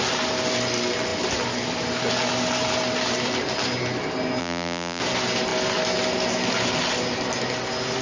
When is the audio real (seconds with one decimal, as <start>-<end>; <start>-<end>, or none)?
0.0-4.4; 5.0-8.0